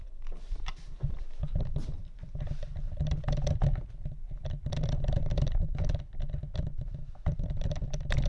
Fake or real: fake